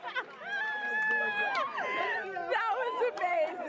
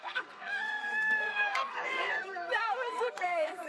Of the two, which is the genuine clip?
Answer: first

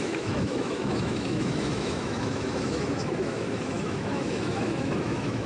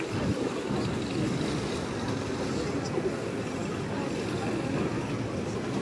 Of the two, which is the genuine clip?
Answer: second